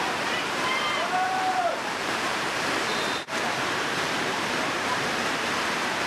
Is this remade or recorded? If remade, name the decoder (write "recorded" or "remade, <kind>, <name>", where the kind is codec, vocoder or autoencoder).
remade, vocoder, BigVGAN v2